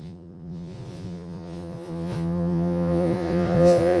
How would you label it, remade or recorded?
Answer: remade